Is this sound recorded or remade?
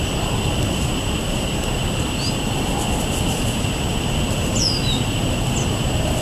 recorded